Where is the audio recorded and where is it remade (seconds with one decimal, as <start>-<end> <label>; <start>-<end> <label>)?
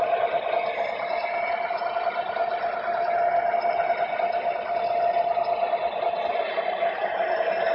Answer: 0.0-7.7 recorded